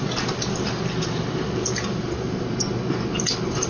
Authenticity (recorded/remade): recorded